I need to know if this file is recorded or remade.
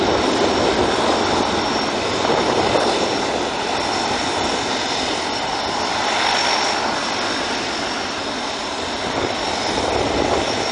remade